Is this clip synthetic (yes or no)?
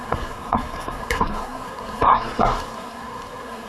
yes